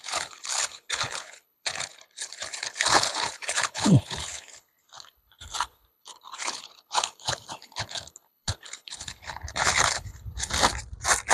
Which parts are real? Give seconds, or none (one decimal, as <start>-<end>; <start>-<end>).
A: 10.5-11.3